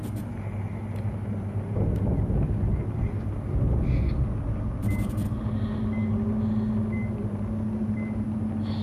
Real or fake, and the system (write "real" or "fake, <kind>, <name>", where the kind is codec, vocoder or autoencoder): real